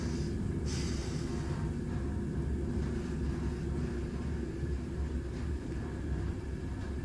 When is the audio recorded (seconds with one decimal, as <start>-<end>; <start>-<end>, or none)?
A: 0.0-7.0